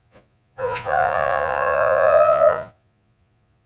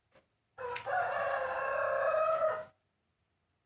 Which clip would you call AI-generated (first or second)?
first